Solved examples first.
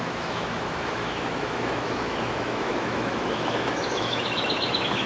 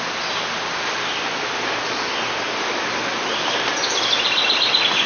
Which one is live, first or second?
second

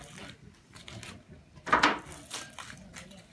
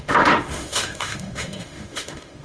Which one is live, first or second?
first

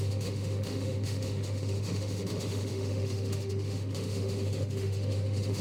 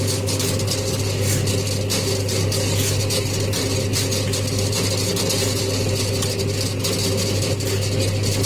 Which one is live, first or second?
second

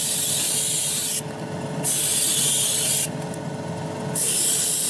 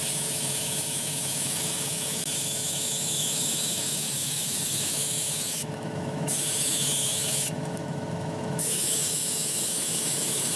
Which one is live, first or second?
first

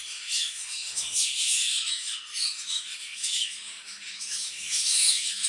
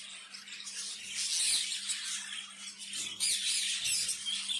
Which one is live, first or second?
second